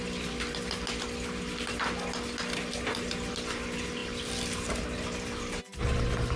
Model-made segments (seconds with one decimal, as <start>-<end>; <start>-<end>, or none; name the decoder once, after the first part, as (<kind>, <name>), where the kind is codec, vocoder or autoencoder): none